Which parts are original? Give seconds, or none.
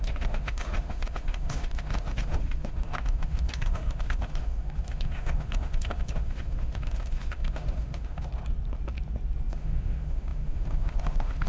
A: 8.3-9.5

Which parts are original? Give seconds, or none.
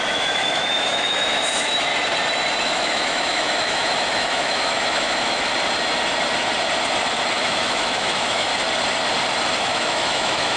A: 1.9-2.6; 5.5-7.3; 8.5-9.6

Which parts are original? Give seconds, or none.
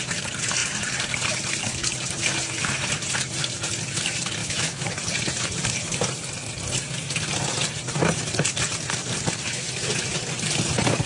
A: 0.0-4.4; 4.9-11.1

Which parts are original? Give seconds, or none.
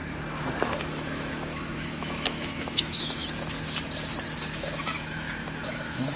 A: 0.0-0.9; 3.2-4.5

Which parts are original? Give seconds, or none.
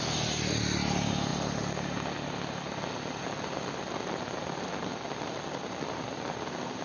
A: 0.0-6.8